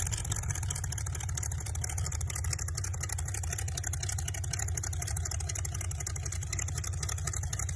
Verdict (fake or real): real